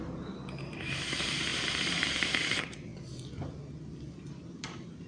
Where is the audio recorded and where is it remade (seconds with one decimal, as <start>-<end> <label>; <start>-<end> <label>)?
0.0-2.9 remade; 2.9-4.3 recorded; 4.3-5.1 remade